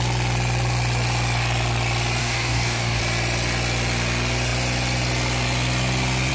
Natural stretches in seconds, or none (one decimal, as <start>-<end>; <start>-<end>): 0.0-2.2; 3.0-6.3